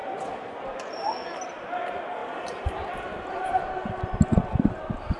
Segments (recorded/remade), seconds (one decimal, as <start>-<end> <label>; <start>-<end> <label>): 0.0-2.2 recorded; 2.2-3.6 remade; 3.6-5.2 recorded